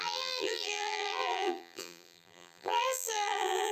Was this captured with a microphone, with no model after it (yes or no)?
no